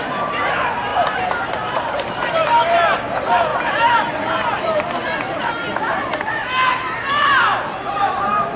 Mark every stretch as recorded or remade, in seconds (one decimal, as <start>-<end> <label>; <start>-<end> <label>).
0.0-3.5 remade; 3.5-6.3 recorded; 6.3-8.6 remade

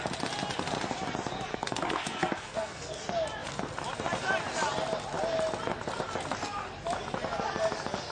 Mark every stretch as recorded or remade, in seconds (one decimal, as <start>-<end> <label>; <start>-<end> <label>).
0.0-1.5 recorded; 1.5-3.0 remade; 3.0-8.1 recorded